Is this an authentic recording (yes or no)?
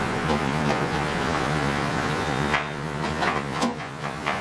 no